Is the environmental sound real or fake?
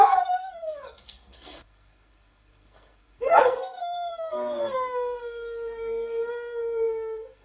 fake